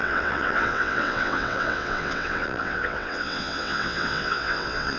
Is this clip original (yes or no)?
no